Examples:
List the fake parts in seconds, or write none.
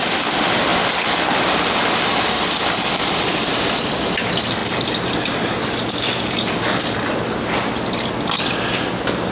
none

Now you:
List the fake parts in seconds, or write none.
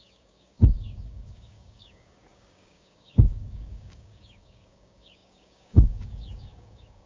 0.0-7.1 (codec, DAC)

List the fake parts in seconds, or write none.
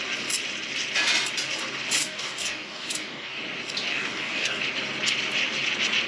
2.0-3.4 (codec, DAC); 3.9-4.6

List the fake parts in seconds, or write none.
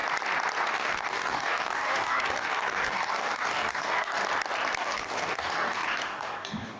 0.7-4.2 (codec, DAC); 4.8-6.8